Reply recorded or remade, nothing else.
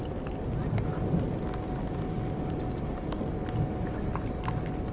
recorded